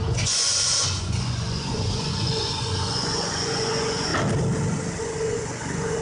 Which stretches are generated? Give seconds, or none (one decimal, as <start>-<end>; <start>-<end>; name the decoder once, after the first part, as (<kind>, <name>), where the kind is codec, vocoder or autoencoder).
0.0-4.1 (vocoder, Vocos); 5.0-6.0